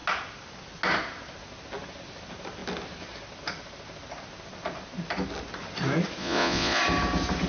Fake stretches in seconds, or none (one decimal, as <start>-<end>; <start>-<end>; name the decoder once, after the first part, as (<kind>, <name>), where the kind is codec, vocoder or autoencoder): 6.2-6.8 (vocoder, Vocos)